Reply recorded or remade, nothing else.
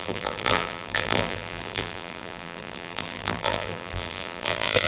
remade